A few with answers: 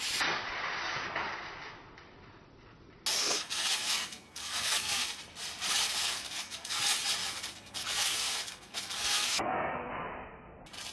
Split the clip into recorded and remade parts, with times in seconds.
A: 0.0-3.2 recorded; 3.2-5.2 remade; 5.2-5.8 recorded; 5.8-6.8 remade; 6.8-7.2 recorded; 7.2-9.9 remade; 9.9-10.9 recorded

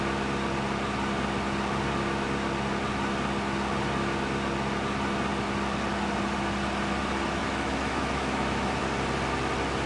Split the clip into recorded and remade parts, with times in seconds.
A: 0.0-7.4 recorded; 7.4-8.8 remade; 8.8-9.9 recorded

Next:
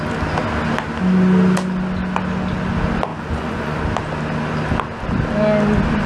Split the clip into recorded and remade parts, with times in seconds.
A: 0.0-3.1 recorded; 3.1-3.8 remade; 3.8-6.1 recorded

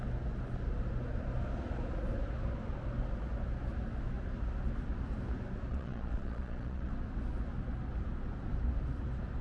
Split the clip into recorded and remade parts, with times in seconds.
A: 0.0-5.7 recorded; 5.7-6.9 remade; 6.9-9.4 recorded

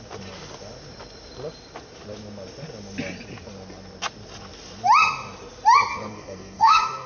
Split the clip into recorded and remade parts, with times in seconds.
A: 0.0-5.9 recorded; 5.9-7.1 remade

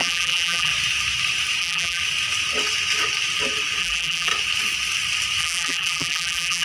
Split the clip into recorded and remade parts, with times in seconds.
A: 0.0-0.7 remade; 0.7-1.6 recorded; 1.6-2.0 remade; 2.0-3.8 recorded; 3.8-4.3 remade; 4.3-5.4 recorded; 5.4-6.6 remade